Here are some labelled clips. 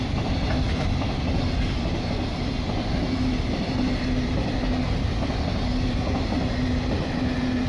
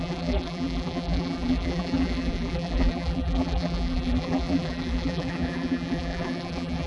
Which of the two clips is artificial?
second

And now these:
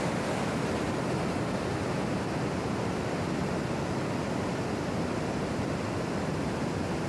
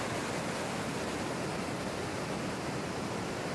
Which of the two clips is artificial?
second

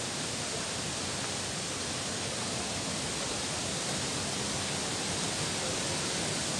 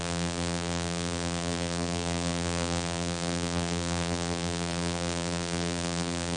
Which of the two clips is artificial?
second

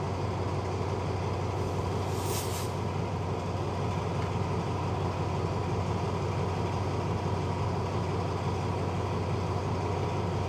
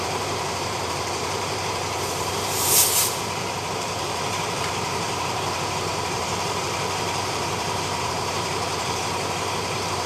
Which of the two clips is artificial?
second